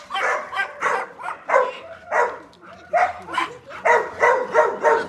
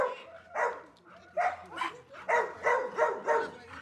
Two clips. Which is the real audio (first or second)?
second